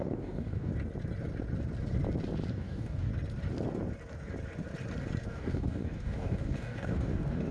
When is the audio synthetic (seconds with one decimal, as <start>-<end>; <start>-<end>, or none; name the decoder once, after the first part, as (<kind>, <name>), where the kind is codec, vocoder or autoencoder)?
0.0-0.7 (codec, DAC); 2.5-3.1; 5.2-7.5